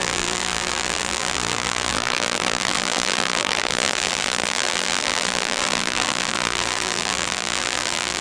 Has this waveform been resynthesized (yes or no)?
yes